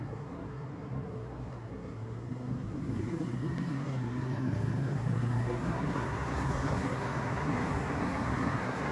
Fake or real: fake